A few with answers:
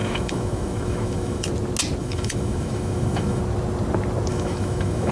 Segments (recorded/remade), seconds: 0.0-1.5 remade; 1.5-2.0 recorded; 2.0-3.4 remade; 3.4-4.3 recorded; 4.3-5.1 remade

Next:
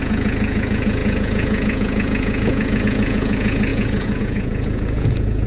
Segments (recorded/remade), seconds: 0.0-5.5 remade

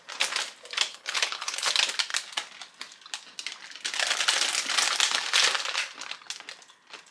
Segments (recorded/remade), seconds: 0.0-0.9 recorded; 0.9-1.7 remade; 1.7-7.1 recorded

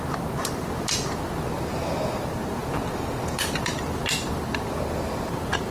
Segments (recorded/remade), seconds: 0.0-5.7 recorded

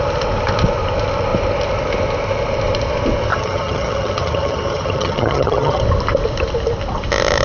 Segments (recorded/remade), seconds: 0.0-3.3 recorded; 3.3-5.8 remade; 5.8-7.4 recorded

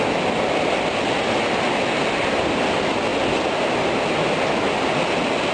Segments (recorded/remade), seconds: 0.0-5.5 recorded

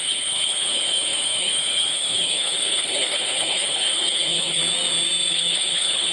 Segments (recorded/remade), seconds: 0.0-4.6 remade; 4.6-5.3 recorded; 5.3-6.1 remade

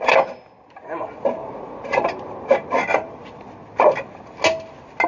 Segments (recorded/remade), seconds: 0.0-1.4 recorded; 1.4-2.1 remade; 2.1-5.1 recorded